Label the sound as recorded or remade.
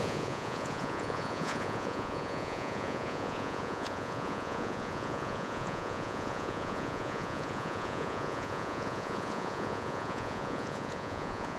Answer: remade